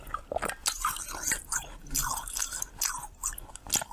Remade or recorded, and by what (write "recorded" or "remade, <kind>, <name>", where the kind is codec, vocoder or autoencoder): recorded